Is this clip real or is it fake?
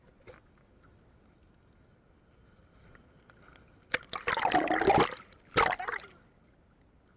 real